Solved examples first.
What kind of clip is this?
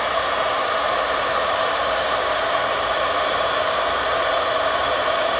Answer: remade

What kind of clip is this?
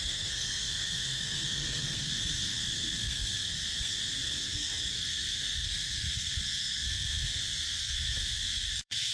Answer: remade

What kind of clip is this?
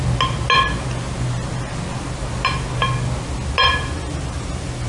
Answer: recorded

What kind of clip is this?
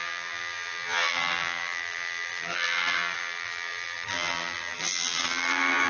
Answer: remade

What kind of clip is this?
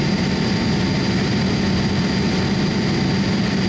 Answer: recorded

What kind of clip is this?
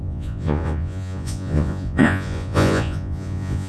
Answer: remade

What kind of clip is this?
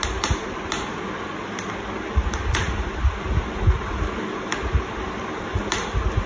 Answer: recorded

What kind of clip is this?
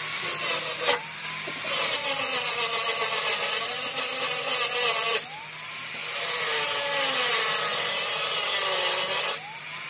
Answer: recorded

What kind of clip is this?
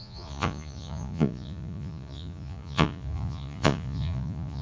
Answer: remade